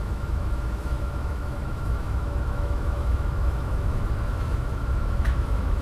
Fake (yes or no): yes